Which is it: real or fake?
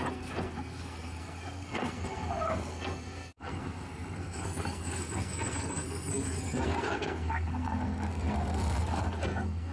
fake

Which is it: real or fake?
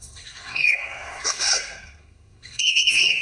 fake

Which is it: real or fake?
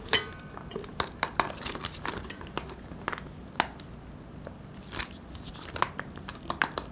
real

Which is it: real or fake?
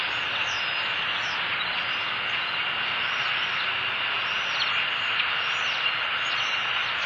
real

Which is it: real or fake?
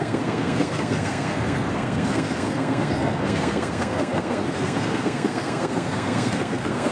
fake